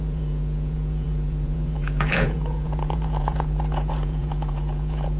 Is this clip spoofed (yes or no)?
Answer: yes